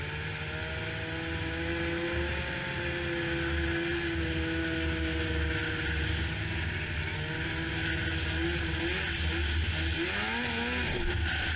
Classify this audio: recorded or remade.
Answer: recorded